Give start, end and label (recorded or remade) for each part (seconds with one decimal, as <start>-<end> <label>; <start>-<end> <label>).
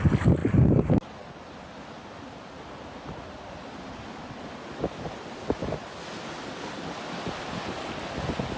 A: 0.0-8.6 recorded